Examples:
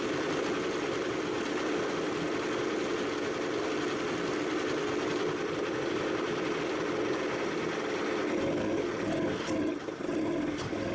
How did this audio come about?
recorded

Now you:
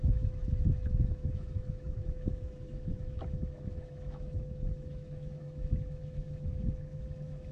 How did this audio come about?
remade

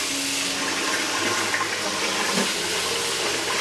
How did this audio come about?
recorded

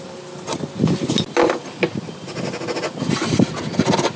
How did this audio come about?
recorded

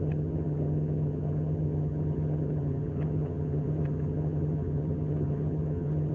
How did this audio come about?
remade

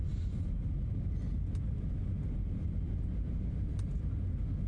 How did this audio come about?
recorded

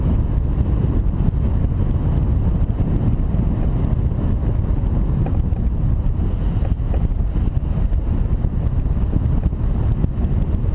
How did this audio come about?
recorded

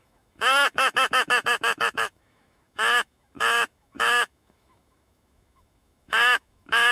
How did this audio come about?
remade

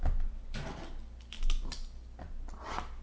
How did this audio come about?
recorded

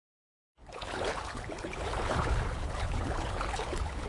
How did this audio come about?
remade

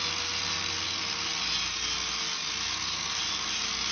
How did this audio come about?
recorded